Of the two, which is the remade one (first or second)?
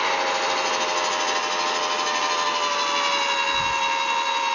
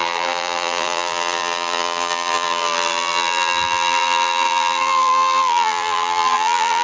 second